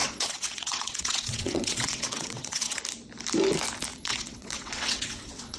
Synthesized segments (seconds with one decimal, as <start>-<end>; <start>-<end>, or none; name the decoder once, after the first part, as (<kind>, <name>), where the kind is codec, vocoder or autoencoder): 0.0-2.8 (vocoder, WaveNeXt); 3.9-5.6